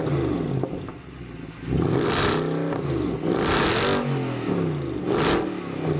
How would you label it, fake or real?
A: real